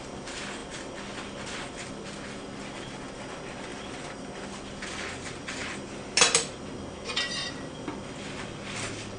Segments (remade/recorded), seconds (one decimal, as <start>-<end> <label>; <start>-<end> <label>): 0.0-3.7 recorded; 3.7-4.6 remade; 4.6-5.6 recorded; 5.6-6.6 remade; 6.6-9.2 recorded